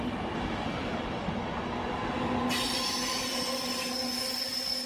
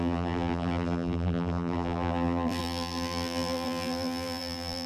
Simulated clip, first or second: second